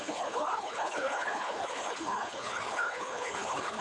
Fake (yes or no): yes